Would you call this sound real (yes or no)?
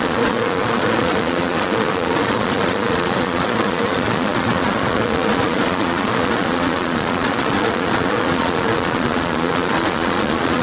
no